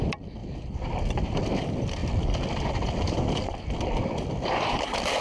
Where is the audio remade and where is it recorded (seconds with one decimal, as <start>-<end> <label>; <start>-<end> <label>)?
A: 0.0-0.4 recorded; 0.4-1.4 remade; 1.4-2.0 recorded; 2.0-5.2 remade